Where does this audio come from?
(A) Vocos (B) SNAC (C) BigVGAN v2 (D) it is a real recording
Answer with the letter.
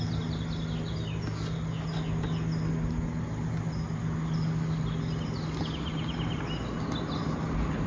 D